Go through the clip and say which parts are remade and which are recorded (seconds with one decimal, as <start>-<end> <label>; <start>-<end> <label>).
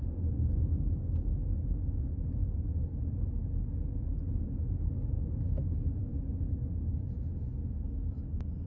0.0-8.7 recorded